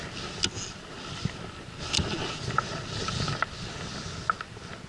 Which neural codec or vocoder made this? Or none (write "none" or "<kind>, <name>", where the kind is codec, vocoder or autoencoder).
none